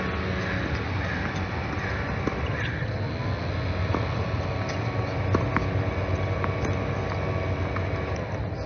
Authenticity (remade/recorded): recorded